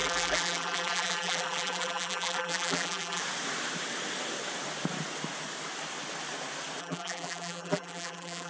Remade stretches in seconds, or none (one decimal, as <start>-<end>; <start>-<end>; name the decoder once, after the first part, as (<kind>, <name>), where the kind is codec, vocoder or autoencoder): 0.0-3.2 (vocoder, BigVGAN v2); 6.8-8.5